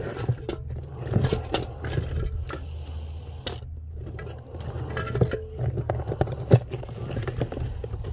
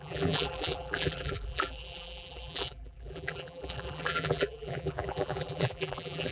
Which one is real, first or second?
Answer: first